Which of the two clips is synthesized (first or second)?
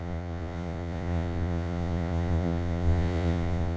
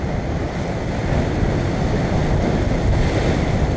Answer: first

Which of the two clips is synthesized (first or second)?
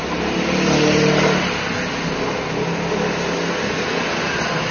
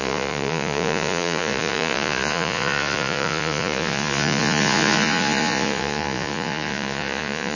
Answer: second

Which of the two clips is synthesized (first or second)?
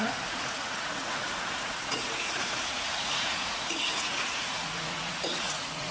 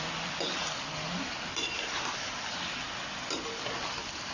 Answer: first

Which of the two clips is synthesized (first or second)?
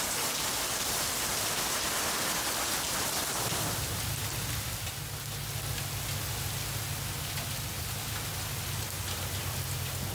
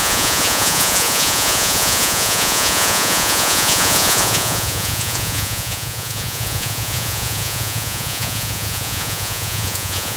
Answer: second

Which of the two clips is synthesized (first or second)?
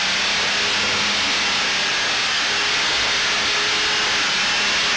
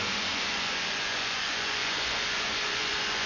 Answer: second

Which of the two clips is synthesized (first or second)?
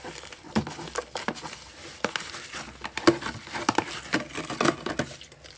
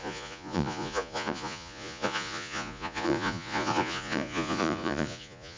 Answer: second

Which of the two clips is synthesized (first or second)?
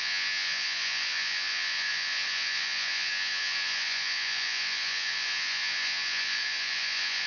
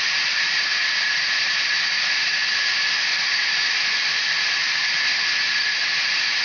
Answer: first